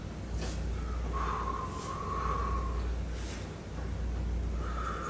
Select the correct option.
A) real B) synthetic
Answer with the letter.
A